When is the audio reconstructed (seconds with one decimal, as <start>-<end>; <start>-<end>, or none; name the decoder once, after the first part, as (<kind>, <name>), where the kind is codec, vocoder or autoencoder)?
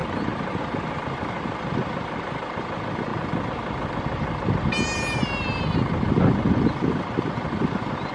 0.0-0.6 (vocoder, BigVGAN v2)